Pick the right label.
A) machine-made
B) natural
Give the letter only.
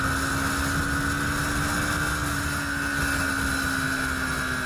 B